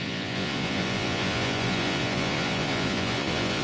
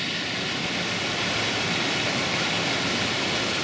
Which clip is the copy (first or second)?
first